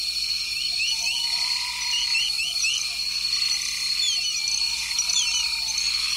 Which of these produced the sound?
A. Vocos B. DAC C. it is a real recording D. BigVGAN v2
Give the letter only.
C